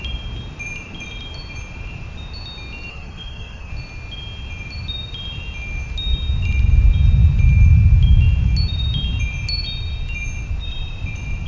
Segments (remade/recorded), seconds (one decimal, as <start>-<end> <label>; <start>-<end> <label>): 0.0-2.9 recorded; 2.9-3.7 remade; 3.7-11.5 recorded